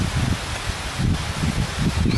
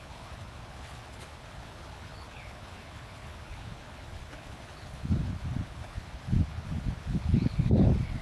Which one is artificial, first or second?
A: second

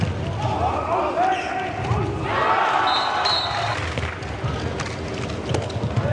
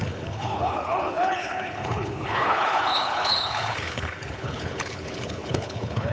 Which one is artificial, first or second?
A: second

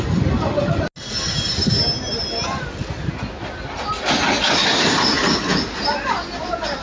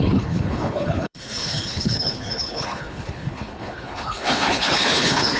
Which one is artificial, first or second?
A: second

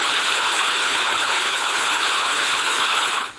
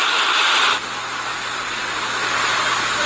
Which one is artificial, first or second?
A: first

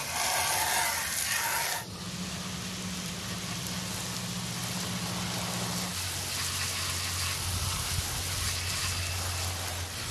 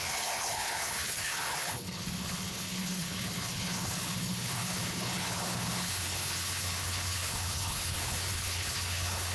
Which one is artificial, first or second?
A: second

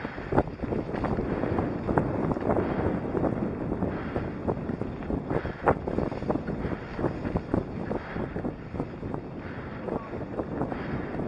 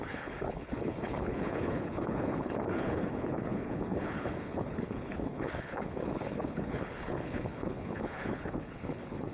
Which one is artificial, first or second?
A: second